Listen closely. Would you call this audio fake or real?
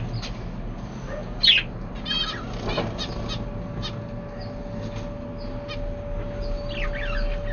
real